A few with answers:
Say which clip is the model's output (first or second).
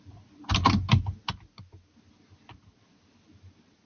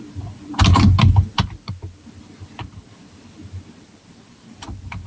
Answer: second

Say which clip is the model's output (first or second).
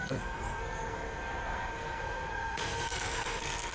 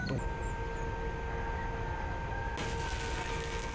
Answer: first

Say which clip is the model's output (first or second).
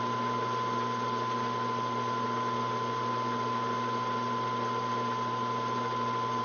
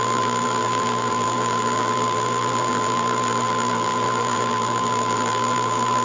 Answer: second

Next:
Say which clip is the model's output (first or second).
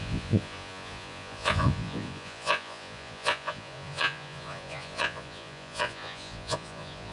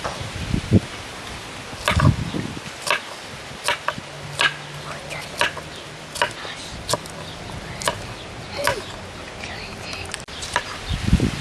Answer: first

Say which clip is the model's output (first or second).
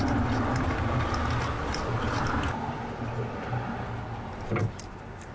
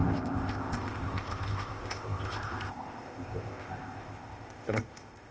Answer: second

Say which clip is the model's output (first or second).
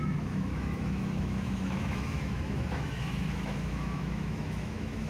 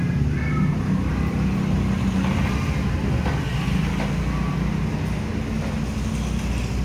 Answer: first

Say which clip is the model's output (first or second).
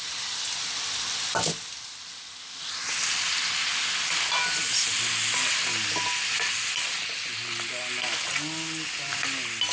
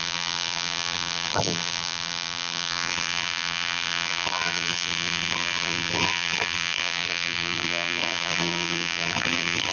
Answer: second